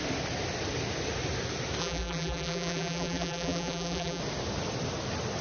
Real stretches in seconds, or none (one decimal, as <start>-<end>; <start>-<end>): 0.0-1.8; 4.2-5.4